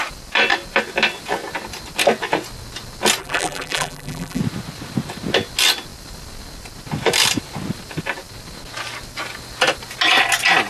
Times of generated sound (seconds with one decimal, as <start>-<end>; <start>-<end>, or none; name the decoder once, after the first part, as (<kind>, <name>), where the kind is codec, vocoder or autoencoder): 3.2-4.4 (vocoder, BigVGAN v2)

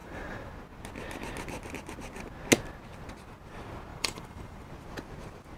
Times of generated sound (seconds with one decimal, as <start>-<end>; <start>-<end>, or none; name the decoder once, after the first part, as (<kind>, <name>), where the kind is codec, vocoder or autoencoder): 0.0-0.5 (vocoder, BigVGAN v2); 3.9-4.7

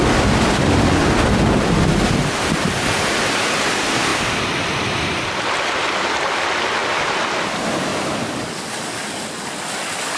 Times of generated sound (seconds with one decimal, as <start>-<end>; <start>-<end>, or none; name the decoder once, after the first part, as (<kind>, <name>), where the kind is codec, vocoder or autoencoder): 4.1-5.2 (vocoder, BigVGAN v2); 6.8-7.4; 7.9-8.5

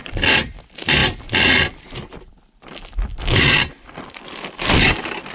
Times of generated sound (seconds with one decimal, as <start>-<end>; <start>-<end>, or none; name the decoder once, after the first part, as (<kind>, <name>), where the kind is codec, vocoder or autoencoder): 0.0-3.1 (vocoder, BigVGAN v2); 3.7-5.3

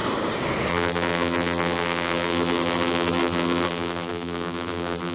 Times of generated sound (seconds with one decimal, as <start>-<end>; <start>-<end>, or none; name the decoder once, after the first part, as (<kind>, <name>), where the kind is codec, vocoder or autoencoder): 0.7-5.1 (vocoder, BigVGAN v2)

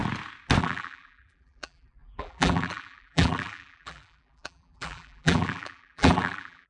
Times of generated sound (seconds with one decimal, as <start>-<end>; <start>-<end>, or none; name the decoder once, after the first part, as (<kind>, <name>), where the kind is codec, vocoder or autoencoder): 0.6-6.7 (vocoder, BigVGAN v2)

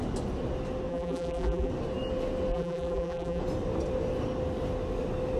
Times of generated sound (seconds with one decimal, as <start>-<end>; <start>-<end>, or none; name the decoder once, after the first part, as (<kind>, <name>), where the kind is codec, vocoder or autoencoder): 0.9-1.7 (vocoder, BigVGAN v2); 2.5-3.4